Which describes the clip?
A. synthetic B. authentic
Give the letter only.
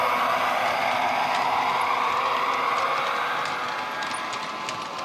B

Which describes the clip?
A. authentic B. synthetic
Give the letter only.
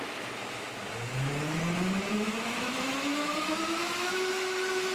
B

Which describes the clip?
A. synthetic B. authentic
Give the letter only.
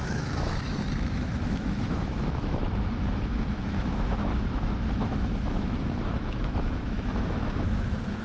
A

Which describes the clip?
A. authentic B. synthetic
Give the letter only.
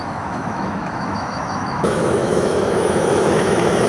B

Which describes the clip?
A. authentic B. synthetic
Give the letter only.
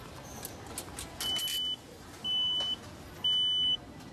A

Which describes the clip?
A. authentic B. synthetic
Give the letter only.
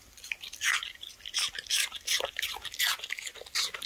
A